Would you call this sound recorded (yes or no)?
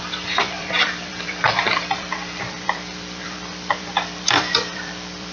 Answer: no